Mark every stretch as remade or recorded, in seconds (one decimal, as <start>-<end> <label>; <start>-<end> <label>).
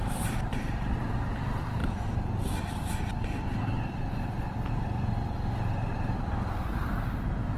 0.0-1.8 remade; 1.8-2.6 recorded; 2.6-3.1 remade; 3.1-7.6 recorded